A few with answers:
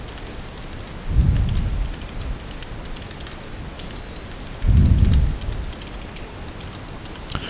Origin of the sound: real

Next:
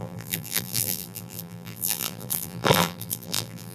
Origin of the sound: fake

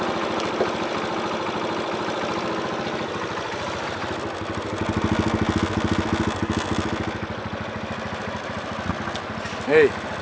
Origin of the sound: real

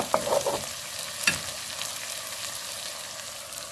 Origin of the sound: real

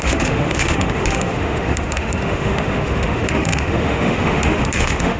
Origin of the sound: fake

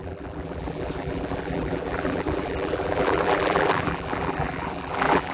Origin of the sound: fake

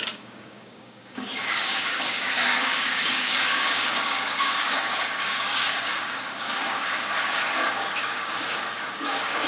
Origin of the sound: fake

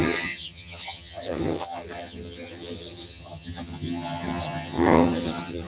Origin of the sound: fake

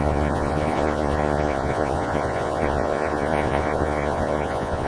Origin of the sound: fake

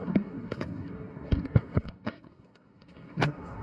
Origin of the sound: fake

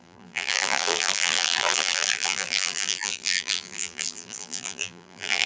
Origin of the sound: fake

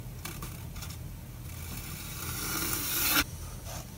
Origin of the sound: real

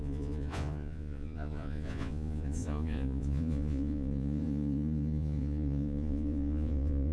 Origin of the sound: fake